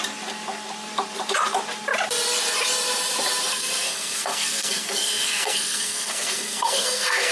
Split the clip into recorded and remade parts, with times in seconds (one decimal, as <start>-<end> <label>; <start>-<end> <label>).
0.0-3.5 recorded; 3.5-7.3 remade